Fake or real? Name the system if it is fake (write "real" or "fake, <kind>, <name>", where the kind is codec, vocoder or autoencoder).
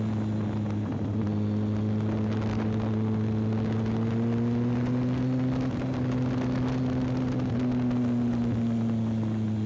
real